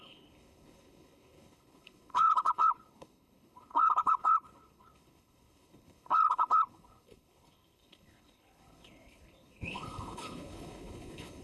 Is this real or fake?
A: fake